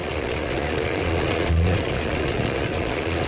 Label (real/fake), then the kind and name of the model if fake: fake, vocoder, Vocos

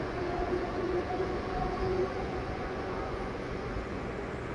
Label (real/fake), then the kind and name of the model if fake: fake, vocoder, Vocos